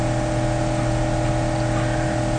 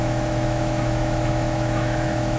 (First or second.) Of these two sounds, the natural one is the first